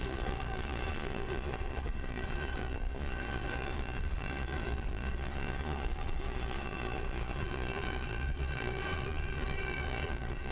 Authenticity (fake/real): fake